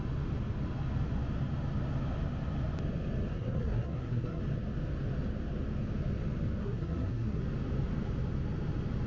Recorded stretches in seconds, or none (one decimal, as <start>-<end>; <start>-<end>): 0.0-3.3; 4.4-6.6; 7.4-9.1